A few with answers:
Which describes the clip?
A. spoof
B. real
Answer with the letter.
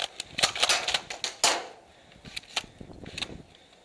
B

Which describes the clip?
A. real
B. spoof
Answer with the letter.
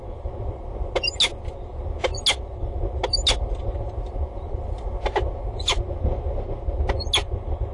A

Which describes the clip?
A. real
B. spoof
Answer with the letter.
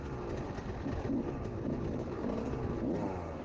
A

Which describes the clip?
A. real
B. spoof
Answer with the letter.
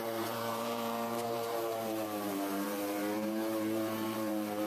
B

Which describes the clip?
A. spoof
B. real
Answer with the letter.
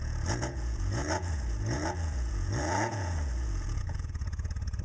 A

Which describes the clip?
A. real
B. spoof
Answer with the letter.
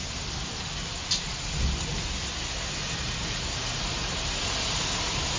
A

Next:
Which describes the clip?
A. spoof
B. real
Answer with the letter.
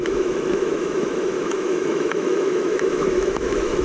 A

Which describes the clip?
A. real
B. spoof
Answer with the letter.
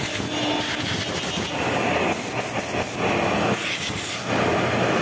A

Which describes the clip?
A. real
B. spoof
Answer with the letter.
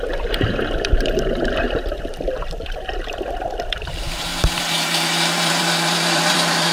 B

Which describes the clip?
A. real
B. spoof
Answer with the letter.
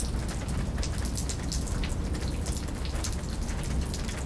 A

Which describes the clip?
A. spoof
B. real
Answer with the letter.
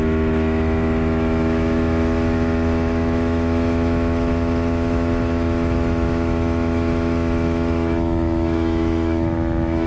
A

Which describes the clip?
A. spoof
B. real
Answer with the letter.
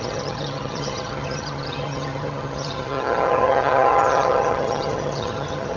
A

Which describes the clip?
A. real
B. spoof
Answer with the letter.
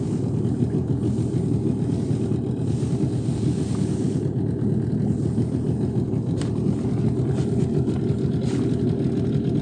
A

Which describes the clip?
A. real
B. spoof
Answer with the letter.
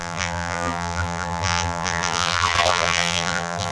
B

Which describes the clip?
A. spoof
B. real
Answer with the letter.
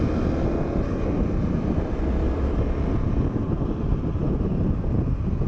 B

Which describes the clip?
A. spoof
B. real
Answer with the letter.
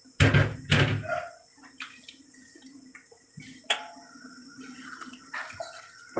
B